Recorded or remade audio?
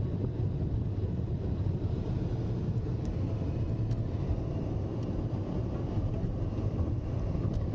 recorded